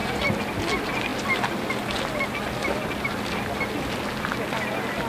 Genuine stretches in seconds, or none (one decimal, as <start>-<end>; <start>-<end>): 0.0-5.1